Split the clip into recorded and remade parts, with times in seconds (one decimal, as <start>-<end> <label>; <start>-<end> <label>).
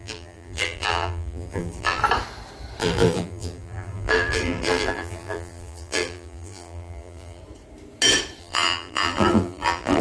0.0-2.0 remade; 2.0-2.8 recorded; 2.8-7.4 remade; 7.4-8.4 recorded; 8.4-10.0 remade